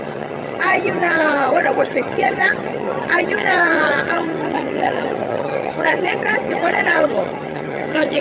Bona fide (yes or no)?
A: no